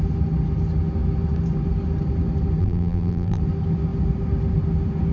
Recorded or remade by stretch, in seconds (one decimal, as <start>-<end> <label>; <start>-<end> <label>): 0.0-2.6 recorded; 2.6-3.4 remade; 3.4-5.1 recorded